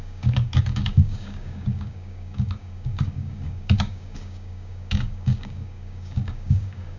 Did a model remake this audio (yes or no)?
yes